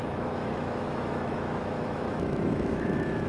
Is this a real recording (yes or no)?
no